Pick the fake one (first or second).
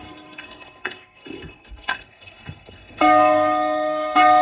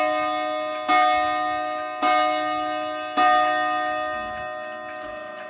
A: first